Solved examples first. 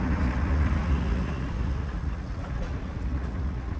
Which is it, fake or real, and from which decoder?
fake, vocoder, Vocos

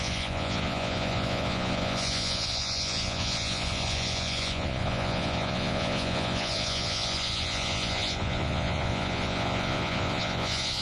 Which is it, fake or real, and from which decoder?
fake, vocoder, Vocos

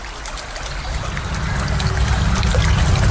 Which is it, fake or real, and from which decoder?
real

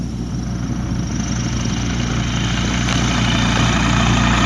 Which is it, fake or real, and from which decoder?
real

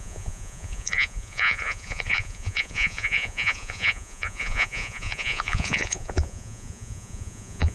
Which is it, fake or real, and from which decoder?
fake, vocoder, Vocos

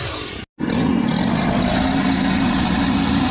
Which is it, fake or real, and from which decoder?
real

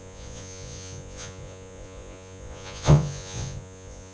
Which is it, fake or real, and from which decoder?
fake, vocoder, Vocos